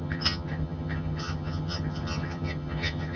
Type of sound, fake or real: fake